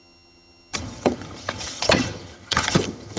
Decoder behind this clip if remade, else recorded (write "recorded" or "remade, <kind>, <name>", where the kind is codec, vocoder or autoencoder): remade, vocoder, HiFi-GAN